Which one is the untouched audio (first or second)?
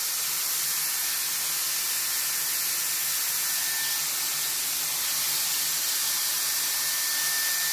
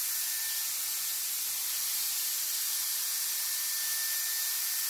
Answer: first